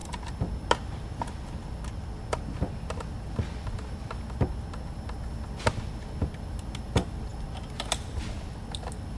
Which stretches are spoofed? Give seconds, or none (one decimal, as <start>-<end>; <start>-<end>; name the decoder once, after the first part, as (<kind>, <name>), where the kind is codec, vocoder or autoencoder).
none